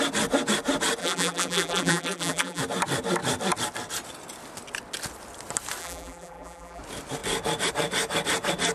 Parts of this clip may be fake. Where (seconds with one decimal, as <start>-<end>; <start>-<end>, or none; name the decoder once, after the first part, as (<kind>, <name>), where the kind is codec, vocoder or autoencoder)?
1.0-2.6 (vocoder, BigVGAN v2); 5.8-6.8